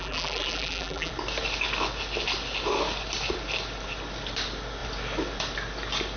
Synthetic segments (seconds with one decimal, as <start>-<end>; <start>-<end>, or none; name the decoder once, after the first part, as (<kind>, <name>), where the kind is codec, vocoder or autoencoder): 0.0-1.1 (vocoder, BigVGAN v2)